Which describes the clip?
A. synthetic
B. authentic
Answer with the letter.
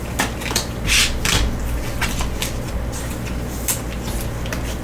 B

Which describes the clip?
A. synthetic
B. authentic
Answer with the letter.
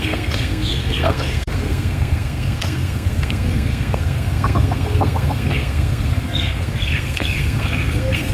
A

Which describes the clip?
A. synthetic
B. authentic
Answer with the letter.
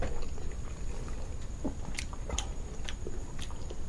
B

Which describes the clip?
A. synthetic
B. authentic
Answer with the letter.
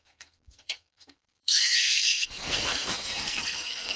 A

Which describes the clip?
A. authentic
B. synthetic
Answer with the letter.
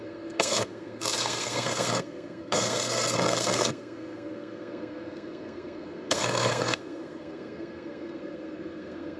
B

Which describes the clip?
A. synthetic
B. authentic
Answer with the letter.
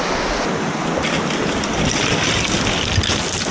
B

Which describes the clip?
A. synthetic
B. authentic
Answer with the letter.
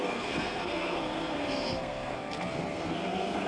A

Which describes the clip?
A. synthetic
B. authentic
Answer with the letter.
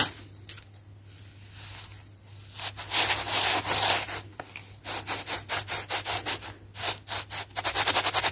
B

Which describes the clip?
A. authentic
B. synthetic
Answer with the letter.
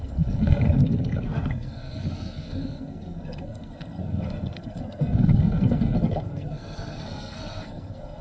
B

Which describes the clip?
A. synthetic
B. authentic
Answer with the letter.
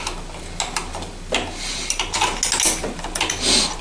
B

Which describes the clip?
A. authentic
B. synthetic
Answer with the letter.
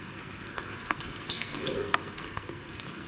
B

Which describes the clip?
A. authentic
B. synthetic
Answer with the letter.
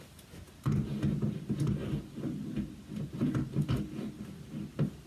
A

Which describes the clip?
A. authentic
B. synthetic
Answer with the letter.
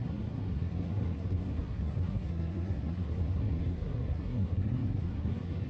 B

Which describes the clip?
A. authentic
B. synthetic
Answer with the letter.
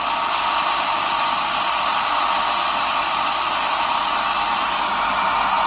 A